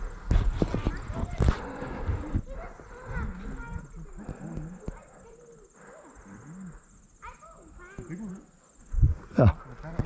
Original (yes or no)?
yes